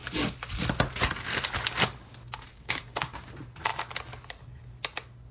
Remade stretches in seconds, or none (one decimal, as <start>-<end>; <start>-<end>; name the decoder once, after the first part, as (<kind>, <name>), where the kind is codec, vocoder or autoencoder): 2.5-3.3 (codec, DAC)